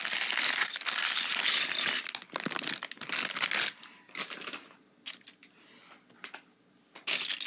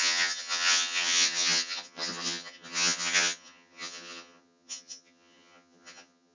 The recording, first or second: first